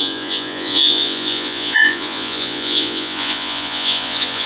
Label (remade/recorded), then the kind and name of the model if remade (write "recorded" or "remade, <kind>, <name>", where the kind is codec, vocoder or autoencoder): remade, vocoder, Vocos